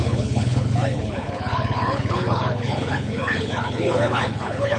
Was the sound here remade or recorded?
remade